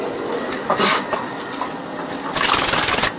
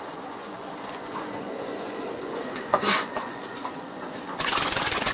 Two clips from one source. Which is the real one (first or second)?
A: first